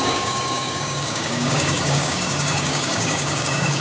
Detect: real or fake fake